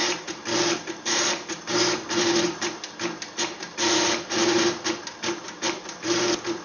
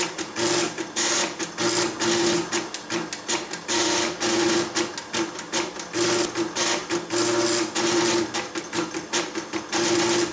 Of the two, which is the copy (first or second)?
first